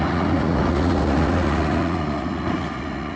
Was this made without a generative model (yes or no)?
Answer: no